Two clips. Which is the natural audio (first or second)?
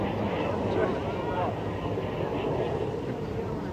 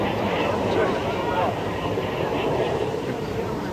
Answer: first